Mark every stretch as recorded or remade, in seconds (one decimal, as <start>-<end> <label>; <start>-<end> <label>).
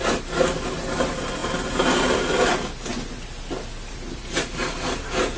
0.0-5.4 recorded